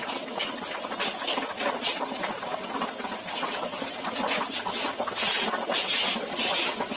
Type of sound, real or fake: real